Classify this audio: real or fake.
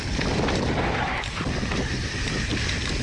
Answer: real